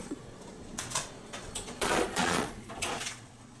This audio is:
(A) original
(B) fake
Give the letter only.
B